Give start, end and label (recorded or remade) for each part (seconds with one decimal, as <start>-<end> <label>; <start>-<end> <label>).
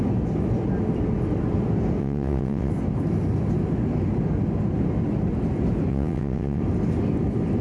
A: 0.0-2.0 recorded; 2.0-2.7 remade; 2.7-5.9 recorded; 5.9-6.6 remade; 6.6-7.6 recorded